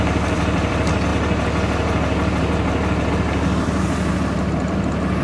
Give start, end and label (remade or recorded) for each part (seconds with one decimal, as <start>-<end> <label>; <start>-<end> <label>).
0.0-1.1 remade; 1.1-3.1 recorded; 3.1-5.2 remade